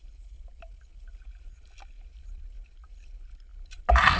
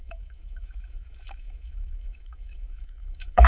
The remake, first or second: second